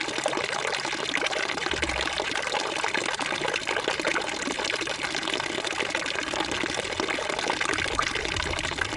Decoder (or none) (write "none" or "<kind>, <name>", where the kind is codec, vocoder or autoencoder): none